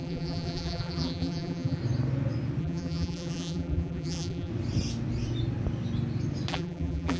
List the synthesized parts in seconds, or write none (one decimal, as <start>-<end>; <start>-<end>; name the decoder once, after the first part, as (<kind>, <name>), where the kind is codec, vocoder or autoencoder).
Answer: 0.0-1.8 (vocoder, BigVGAN v2); 2.6-4.5; 6.5-7.2